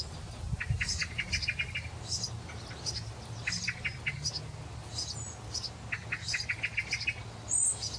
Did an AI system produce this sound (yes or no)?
no